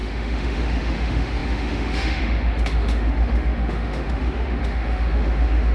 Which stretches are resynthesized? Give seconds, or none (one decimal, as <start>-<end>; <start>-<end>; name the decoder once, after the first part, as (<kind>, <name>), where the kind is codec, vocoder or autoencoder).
0.0-5.7 (autoencoder, DAC-VAE)